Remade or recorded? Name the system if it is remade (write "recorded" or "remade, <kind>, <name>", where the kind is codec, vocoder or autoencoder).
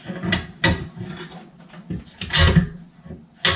recorded